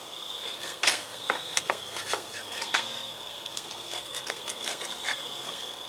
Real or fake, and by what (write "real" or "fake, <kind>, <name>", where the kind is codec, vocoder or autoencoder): fake, codec, SNAC